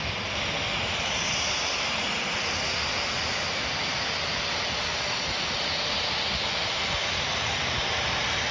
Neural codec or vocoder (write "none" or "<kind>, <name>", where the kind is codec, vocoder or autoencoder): none